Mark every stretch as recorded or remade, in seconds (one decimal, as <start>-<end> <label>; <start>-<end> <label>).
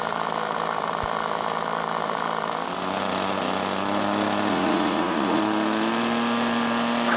0.0-4.5 recorded; 4.5-5.4 remade; 5.4-7.2 recorded